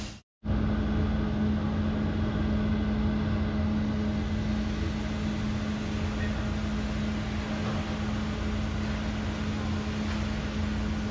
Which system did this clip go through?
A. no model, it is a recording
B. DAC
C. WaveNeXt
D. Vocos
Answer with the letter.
A